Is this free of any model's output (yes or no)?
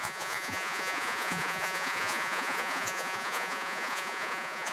no